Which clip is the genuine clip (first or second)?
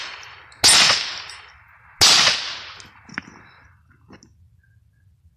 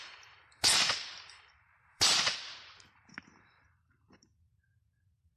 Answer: first